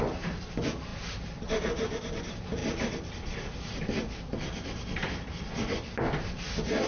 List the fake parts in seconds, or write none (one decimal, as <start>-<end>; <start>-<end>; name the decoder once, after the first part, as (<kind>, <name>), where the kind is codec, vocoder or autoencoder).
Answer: 2.6-3.5 (vocoder, BigVGAN v2)